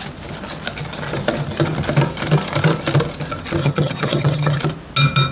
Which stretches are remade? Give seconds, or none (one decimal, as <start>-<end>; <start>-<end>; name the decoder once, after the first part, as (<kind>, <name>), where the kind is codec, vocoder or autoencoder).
3.6-4.6 (vocoder, HiFi-GAN)